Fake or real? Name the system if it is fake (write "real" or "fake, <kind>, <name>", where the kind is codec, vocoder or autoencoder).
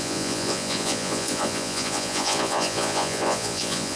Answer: fake, vocoder, Vocos